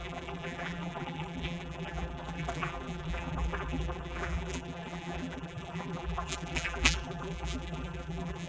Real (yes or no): no